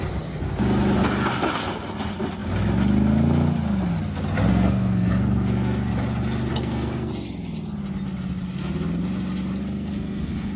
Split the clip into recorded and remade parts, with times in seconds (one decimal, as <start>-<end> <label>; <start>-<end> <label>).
0.0-4.5 recorded; 4.5-5.9 remade; 5.9-6.5 recorded; 6.5-7.1 remade; 7.1-9.6 recorded; 9.6-10.6 remade

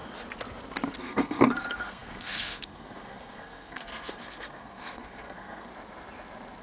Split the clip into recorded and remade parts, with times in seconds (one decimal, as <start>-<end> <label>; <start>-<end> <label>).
0.0-1.0 recorded; 1.0-5.7 remade; 5.7-6.6 recorded